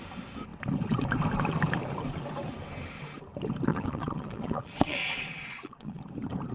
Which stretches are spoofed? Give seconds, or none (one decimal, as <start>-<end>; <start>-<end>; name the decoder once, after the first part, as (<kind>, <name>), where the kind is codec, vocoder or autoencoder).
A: 3.7-6.0 (vocoder, Vocos)